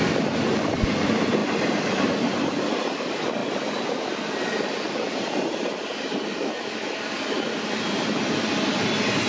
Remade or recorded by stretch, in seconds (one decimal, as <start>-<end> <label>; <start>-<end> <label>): 0.0-9.3 recorded